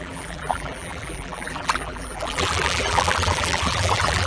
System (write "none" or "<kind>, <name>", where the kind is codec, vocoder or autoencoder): vocoder, BigVGAN v2